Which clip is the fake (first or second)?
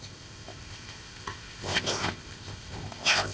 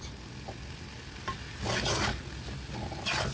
first